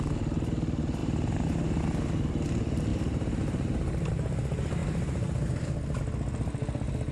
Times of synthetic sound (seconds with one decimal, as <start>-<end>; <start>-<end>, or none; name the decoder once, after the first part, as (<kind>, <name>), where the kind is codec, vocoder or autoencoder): 1.0-1.8 (vocoder, BigVGAN v2); 2.9-4.1; 4.8-6.0